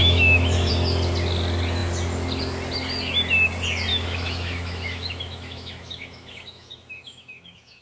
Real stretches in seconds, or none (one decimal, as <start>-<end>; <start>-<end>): 0.7-3.9